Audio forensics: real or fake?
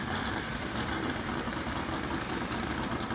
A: real